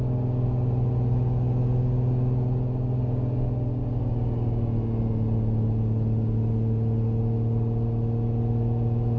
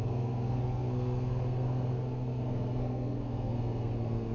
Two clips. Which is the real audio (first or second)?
first